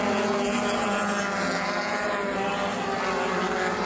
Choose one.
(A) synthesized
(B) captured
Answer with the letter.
B